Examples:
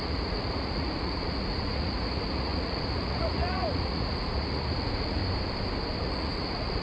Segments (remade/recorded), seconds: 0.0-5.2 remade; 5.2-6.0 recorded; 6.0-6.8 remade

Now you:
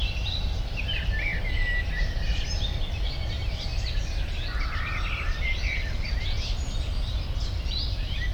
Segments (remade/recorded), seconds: 0.0-8.3 recorded

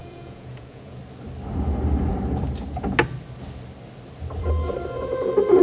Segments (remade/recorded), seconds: 0.0-1.0 remade; 1.0-5.6 recorded

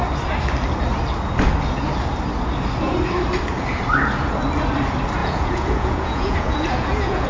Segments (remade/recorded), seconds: 0.0-5.2 recorded; 5.2-7.3 remade

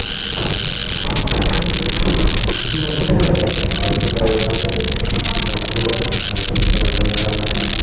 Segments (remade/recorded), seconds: 0.0-7.8 recorded

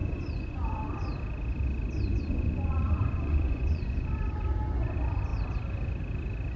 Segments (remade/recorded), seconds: 0.0-0.9 remade; 0.9-2.1 recorded; 2.1-4.1 remade; 4.1-6.6 recorded

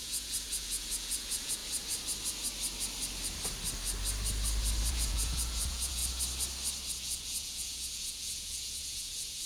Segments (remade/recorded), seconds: 0.0-1.6 remade; 1.6-4.9 recorded; 4.9-6.0 remade; 6.0-6.9 recorded; 6.9-9.5 remade

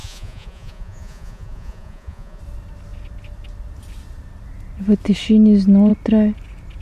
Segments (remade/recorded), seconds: 0.0-2.4 remade; 2.4-6.8 recorded